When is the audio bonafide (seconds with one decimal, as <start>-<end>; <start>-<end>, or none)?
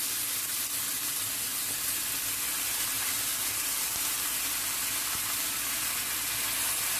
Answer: 0.0-7.0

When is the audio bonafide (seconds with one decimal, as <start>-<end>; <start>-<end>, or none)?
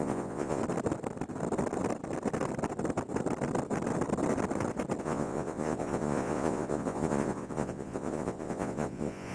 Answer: 0.6-5.0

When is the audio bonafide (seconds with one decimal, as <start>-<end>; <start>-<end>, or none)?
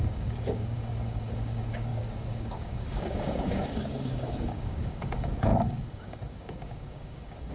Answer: none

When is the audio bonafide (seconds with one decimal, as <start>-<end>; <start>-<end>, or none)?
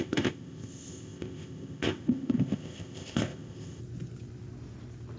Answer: 3.8-5.2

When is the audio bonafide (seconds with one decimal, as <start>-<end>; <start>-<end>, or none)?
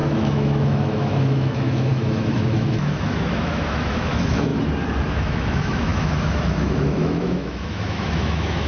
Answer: 4.5-5.1